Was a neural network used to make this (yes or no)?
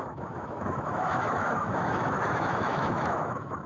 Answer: yes